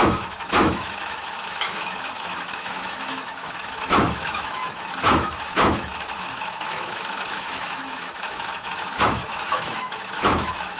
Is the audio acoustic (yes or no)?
no